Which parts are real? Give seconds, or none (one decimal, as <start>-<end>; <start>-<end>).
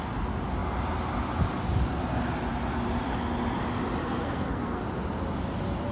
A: 0.0-4.0; 4.8-5.9